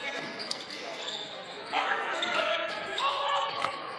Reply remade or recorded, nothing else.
remade